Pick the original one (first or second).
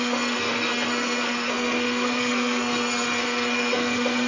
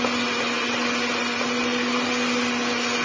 second